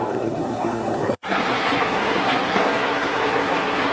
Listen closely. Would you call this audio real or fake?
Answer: fake